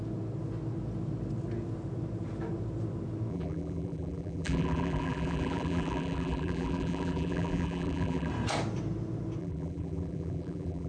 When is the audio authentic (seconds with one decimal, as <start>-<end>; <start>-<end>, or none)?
0.0-3.3; 8.3-9.4